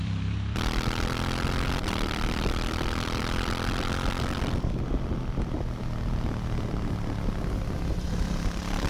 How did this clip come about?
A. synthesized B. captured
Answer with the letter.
A